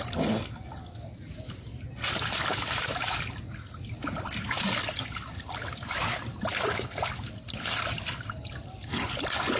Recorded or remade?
recorded